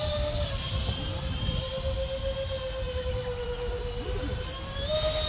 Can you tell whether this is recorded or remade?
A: remade